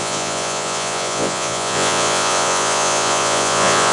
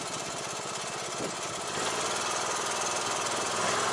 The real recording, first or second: second